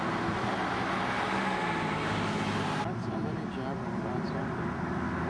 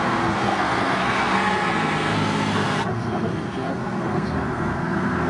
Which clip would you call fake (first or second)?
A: second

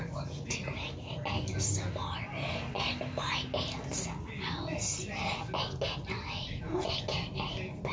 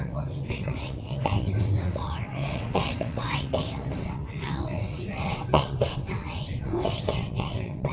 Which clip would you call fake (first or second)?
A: second